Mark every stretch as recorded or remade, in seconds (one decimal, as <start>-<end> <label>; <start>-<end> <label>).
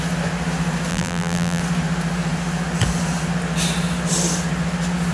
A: 0.0-0.9 recorded; 0.9-1.6 remade; 1.6-5.1 recorded